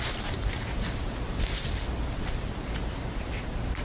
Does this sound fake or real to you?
fake